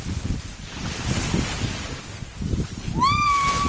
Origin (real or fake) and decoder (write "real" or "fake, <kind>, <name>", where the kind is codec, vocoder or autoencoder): real